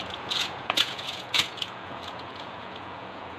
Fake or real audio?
fake